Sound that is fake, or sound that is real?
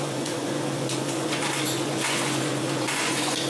fake